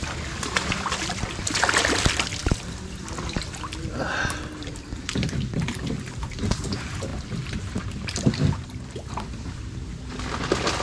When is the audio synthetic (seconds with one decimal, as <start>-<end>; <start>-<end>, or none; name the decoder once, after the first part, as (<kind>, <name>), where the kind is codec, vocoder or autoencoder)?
none